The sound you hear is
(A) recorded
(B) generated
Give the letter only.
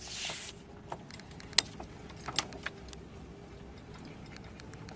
A